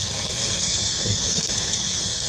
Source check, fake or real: fake